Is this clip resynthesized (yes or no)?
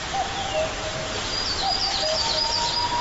no